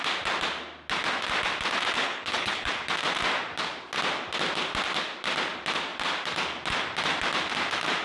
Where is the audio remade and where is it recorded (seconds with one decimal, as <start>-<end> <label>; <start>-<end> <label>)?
0.0-2.0 recorded; 2.0-2.7 remade; 2.7-8.0 recorded